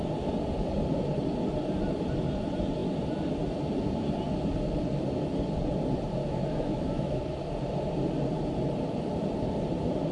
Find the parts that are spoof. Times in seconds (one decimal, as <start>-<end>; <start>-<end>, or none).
6.2-7.2